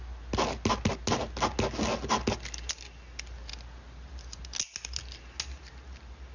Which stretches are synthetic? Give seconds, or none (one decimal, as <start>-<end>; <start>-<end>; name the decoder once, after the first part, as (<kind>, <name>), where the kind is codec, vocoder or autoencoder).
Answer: none